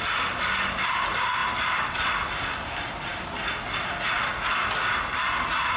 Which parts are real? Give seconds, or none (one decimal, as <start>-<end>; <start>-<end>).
0.0-5.8